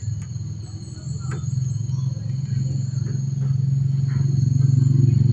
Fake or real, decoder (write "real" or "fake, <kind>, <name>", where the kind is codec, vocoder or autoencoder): real